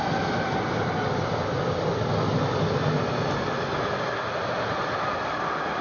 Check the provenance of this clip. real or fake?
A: real